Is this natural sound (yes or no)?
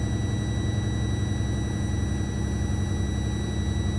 yes